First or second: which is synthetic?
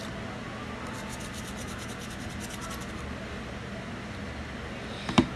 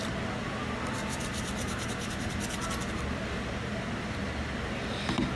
second